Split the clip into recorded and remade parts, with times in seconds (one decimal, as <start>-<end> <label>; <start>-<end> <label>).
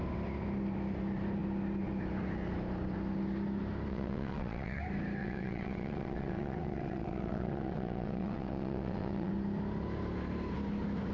0.0-3.9 recorded; 3.9-4.8 remade; 4.8-5.2 recorded; 5.2-9.3 remade; 9.3-11.1 recorded